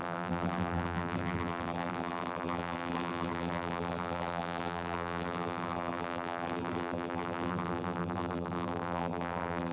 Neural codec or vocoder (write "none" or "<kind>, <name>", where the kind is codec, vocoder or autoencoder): vocoder, BigVGAN v2